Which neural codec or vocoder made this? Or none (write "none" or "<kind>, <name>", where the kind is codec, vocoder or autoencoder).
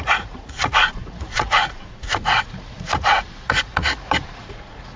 vocoder, Vocos